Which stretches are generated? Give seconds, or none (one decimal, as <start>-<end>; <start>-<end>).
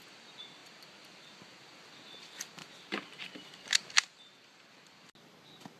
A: none